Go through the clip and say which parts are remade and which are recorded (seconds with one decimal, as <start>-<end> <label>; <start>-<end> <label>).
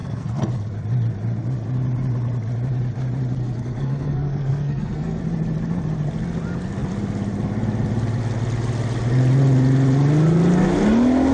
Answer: 0.0-0.5 remade; 0.5-3.4 recorded; 3.4-5.2 remade; 5.2-11.3 recorded